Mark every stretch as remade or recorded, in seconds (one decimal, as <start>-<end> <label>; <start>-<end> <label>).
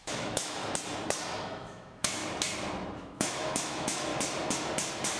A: 0.0-0.6 remade; 0.6-1.4 recorded; 1.4-2.2 remade; 2.2-3.0 recorded; 3.0-4.1 remade; 4.1-5.2 recorded